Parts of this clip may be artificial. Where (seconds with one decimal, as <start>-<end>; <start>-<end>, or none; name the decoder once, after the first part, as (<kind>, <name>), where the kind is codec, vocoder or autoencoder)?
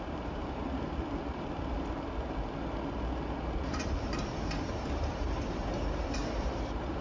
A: 0.0-0.4 (vocoder, BigVGAN v2); 3.7-7.0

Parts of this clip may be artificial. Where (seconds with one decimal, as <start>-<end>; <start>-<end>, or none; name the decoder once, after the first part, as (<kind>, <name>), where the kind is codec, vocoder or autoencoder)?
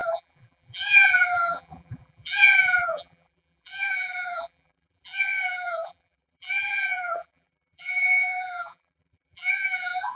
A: 0.0-10.2 (vocoder, BigVGAN v2)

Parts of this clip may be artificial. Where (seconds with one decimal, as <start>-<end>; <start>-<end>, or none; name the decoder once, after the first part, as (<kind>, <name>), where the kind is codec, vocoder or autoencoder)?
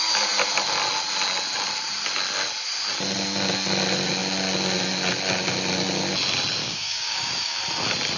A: 6.6-7.6 (codec, DAC)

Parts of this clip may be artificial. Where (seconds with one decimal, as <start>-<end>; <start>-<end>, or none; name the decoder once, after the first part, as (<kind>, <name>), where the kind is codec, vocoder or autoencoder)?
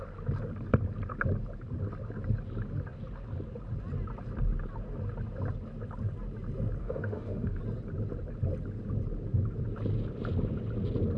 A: 6.8-7.6 (autoencoder, DAC-VAE)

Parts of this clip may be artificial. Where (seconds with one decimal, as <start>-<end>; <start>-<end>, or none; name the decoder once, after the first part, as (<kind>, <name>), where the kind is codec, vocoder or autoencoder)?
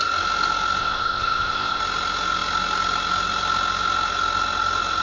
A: 0.8-1.8 (codec, ZipCodec)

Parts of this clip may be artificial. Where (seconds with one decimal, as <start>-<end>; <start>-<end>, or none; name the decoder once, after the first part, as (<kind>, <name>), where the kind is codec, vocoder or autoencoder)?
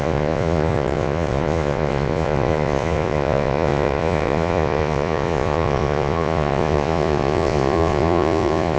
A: 0.0-8.8 (vocoder, Vocos)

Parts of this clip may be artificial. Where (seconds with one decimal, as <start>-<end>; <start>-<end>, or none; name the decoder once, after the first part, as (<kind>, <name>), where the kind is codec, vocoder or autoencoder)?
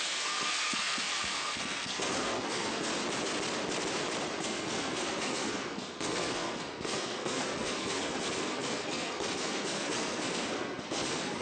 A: 0.0-2.9 (codec, SNAC); 4.4-11.4